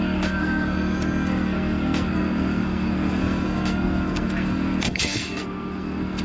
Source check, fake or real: fake